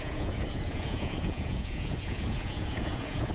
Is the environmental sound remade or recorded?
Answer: remade